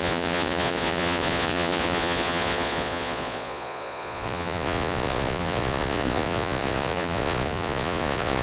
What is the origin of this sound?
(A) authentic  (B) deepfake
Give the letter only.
B